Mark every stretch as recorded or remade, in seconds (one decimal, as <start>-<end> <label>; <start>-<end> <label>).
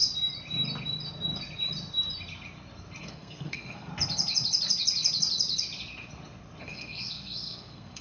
0.0-3.0 recorded; 3.0-3.9 remade; 3.9-6.6 recorded; 6.6-8.0 remade